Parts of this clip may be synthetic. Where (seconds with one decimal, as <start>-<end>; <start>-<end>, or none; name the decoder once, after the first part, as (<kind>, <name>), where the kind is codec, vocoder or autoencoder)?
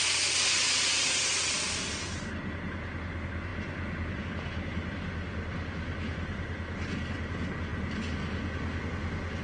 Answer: none